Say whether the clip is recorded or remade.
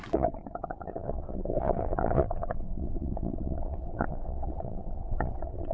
remade